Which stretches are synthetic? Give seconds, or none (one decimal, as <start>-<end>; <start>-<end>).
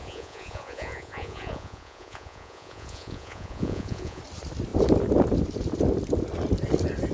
0.0-4.2